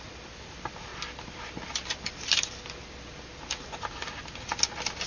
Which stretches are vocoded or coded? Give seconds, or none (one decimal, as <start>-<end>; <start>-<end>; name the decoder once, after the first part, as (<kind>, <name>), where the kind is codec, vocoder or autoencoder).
none